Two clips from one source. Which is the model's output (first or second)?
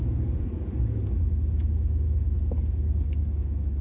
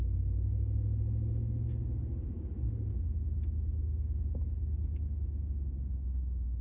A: first